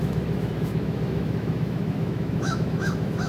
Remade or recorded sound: remade